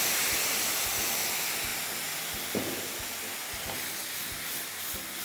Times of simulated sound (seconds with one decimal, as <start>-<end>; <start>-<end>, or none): none